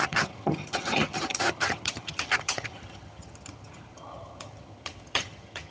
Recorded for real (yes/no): no